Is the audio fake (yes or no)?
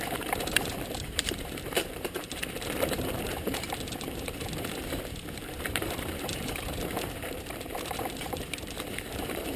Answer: yes